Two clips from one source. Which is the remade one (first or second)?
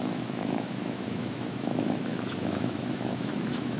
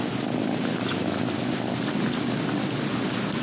first